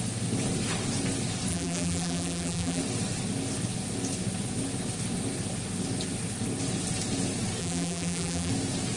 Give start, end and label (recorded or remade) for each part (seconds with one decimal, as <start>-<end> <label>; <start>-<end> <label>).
0.0-1.5 recorded; 1.5-2.8 remade; 2.8-7.6 recorded; 7.6-8.5 remade; 8.5-9.0 recorded